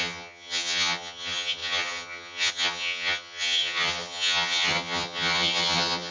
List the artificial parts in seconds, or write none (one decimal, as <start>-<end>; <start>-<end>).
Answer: 0.0-6.1